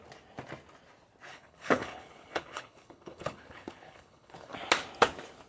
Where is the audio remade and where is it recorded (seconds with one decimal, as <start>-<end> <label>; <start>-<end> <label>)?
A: 0.0-1.3 recorded; 1.3-4.5 remade; 4.5-5.5 recorded